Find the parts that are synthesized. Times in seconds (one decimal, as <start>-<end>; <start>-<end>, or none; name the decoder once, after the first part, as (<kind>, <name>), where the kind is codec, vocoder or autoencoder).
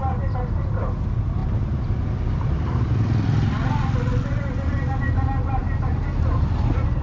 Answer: none